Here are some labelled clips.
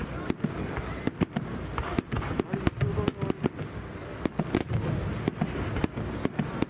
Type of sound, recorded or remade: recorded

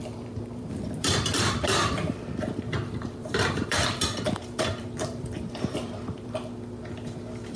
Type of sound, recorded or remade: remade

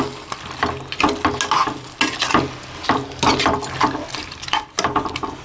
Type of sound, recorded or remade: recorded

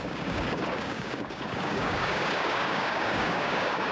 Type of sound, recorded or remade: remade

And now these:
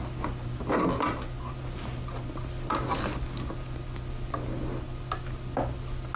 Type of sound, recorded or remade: recorded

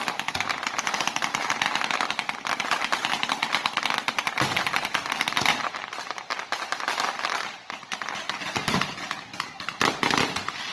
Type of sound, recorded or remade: recorded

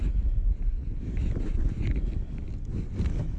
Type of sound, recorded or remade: recorded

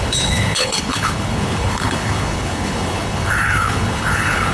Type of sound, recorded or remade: remade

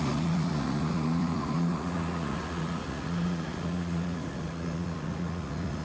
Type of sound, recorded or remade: remade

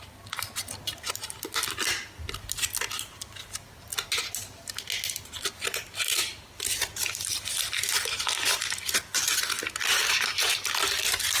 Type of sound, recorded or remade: recorded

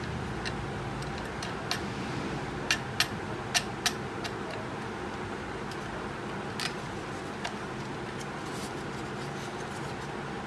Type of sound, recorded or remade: recorded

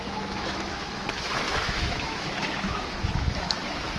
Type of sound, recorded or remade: remade